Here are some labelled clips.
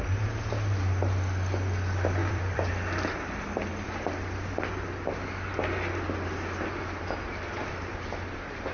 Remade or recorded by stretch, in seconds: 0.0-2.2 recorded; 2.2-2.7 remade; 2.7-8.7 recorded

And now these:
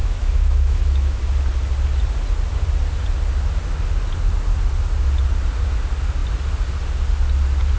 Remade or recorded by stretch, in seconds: 0.0-1.2 remade; 1.2-7.8 recorded

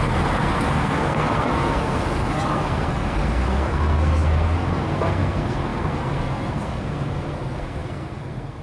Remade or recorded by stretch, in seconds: 0.0-8.6 remade

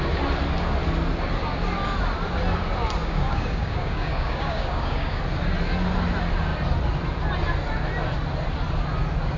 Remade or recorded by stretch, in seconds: 0.0-3.0 recorded; 3.0-5.2 remade; 5.2-9.4 recorded